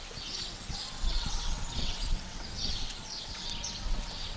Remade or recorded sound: remade